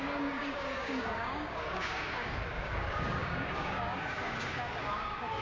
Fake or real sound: fake